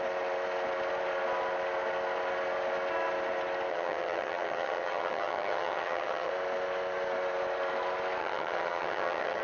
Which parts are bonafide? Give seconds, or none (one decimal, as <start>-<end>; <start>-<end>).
0.0-3.7; 6.3-8.2